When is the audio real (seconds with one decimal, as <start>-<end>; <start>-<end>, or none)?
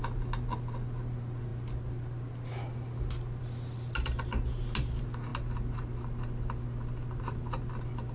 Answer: 0.0-8.1